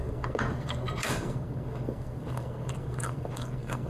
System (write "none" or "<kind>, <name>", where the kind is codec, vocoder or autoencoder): codec, SNAC